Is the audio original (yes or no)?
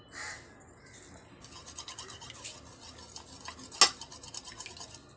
yes